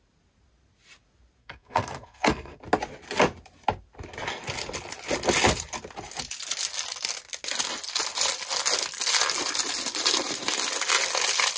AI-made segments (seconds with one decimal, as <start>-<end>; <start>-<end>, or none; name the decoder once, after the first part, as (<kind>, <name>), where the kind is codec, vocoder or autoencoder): 1.4-2.6 (codec, SNAC)